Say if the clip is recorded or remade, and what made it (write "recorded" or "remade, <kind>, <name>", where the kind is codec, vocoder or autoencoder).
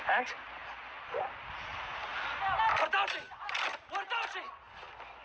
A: recorded